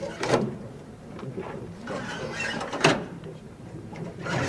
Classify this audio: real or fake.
fake